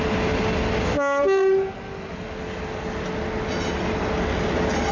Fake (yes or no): no